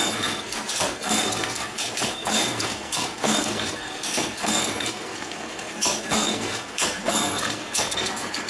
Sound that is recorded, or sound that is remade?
remade